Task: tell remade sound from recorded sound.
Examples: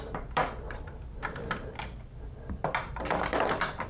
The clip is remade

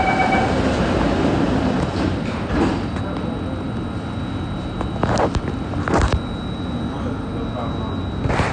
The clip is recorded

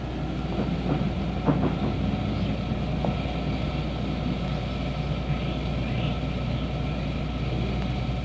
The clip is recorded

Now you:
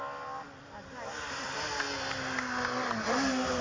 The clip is recorded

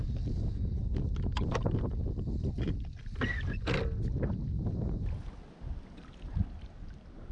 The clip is recorded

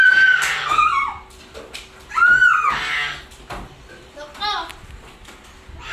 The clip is recorded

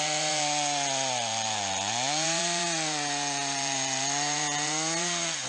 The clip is remade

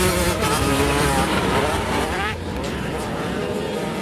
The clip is remade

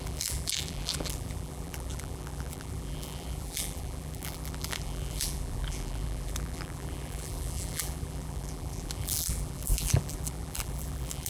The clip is remade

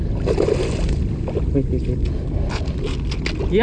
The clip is recorded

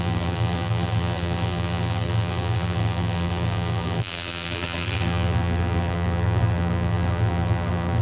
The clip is remade